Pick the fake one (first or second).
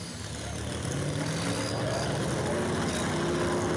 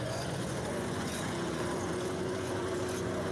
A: second